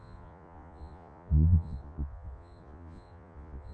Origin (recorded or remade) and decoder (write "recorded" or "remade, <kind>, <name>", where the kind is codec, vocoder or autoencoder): remade, vocoder, Vocos